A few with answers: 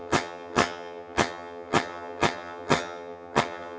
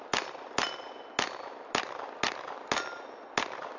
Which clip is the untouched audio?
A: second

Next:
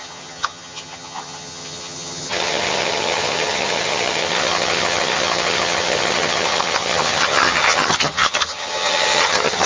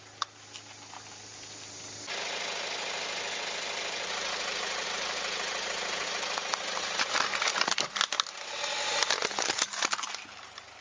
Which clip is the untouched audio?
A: second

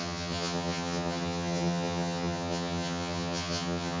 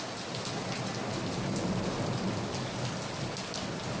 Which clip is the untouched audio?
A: second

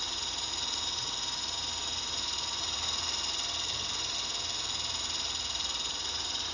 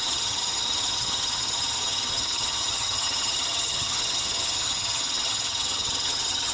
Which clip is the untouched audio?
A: first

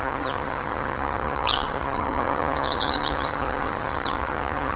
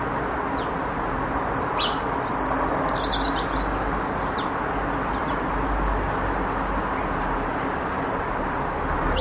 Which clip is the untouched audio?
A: second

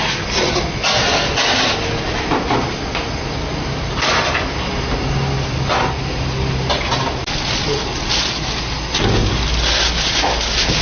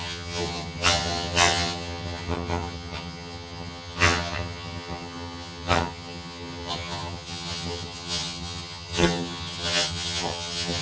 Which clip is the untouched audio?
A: first